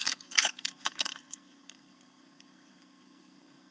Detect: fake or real fake